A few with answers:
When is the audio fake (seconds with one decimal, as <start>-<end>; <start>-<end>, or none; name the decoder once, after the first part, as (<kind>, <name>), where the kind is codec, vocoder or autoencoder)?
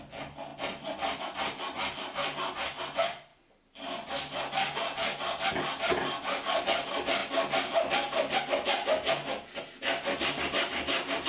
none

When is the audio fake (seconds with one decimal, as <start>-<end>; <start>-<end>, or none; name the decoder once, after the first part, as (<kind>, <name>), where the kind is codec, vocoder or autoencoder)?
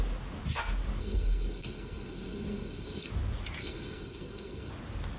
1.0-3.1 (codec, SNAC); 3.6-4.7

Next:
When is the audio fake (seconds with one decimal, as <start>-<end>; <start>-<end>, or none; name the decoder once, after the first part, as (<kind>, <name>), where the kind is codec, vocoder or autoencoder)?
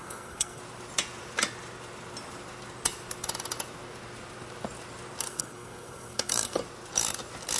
0.0-0.6 (codec, SNAC); 5.2-6.6